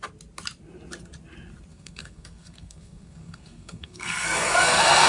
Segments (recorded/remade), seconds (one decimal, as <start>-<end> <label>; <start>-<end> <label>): 0.0-1.7 recorded; 1.7-5.1 remade